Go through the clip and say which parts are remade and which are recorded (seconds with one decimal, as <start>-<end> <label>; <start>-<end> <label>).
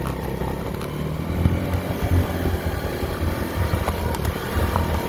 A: 0.0-0.4 recorded; 0.4-2.3 remade; 2.3-2.9 recorded; 2.9-5.1 remade